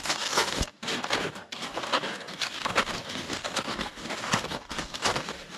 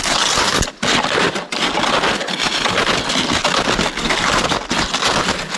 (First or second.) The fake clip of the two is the first